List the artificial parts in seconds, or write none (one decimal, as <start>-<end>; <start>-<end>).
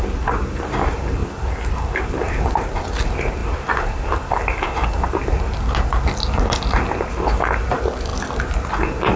1.2-2.8; 8.1-8.7